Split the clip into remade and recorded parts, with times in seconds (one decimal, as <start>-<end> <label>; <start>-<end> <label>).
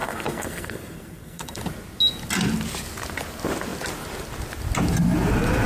0.0-1.6 remade; 1.6-5.7 recorded